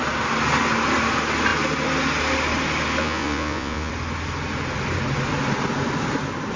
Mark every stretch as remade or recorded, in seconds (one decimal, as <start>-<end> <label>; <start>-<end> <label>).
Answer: 0.0-3.0 recorded; 3.0-3.9 remade; 3.9-6.6 recorded